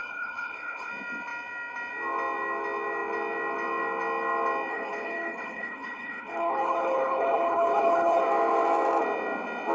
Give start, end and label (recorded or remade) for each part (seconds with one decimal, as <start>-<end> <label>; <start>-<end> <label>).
0.0-0.9 remade; 0.9-4.7 recorded; 4.7-8.2 remade; 8.2-9.7 recorded